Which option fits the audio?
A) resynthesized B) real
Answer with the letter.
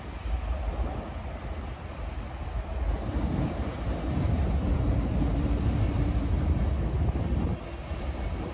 B